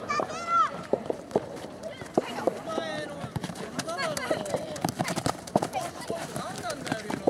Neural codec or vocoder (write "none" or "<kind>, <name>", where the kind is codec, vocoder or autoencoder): vocoder, BigVGAN v2